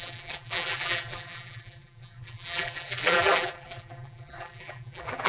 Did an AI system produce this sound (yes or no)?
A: yes